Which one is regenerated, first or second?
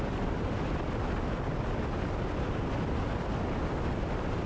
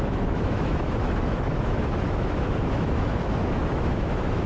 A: second